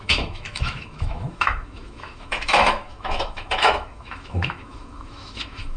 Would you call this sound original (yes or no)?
no